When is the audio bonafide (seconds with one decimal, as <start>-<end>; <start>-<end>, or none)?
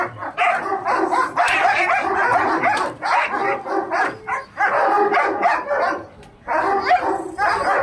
0.0-0.7; 1.8-7.8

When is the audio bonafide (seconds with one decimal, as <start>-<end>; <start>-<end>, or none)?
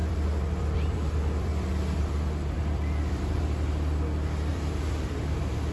3.4-4.5; 5.1-5.7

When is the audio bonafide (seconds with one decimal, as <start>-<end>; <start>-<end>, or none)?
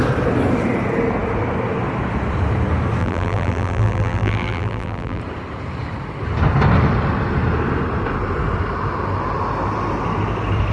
0.0-3.0; 5.2-10.7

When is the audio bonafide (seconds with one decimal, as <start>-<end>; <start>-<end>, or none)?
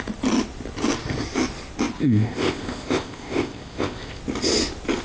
0.0-2.0; 4.2-5.0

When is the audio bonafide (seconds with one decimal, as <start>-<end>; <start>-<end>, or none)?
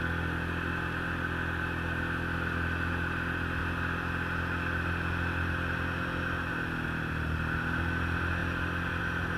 0.0-9.4